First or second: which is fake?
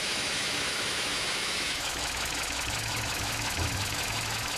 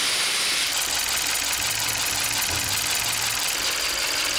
first